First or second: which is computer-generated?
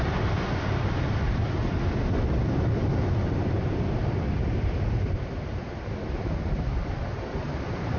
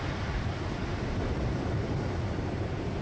second